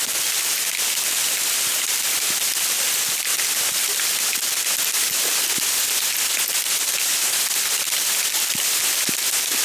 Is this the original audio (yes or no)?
yes